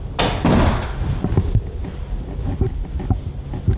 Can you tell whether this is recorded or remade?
recorded